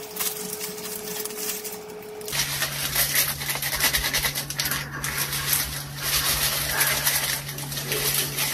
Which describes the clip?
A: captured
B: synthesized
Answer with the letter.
A